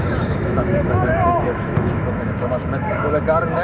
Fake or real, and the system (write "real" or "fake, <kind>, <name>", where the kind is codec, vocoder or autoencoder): fake, autoencoder, DAC-VAE